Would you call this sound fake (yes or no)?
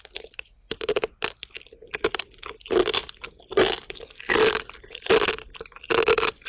no